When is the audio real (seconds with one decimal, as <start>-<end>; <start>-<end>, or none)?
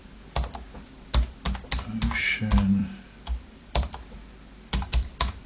0.0-2.8